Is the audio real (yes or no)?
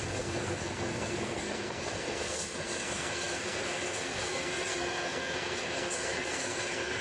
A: no